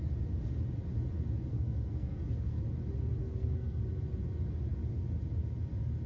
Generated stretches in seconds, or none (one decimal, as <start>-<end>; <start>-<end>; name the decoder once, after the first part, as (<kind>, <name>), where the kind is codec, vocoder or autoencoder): 1.5-2.6 (codec, SNAC); 3.2-3.8